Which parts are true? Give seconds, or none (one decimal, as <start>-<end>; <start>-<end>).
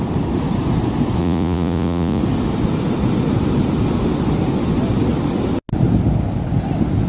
0.0-1.2; 2.2-7.1